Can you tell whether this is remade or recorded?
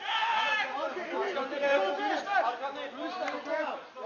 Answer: recorded